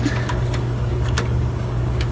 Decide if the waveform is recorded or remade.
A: remade